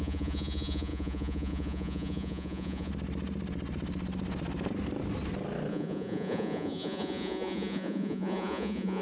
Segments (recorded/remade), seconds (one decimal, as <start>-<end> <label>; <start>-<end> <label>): 0.0-2.9 remade; 2.9-5.7 recorded; 5.7-9.0 remade